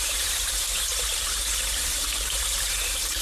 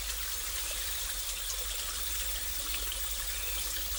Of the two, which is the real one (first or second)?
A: second